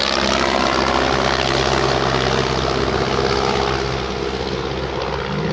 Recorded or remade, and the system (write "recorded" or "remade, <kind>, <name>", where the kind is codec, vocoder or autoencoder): recorded